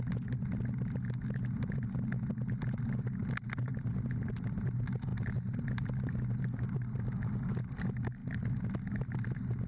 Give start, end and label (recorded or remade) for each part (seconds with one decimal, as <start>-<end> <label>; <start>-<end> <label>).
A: 0.0-9.7 recorded